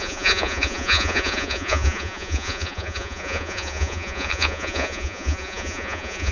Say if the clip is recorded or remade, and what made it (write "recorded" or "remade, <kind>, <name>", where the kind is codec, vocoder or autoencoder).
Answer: remade, vocoder, Vocos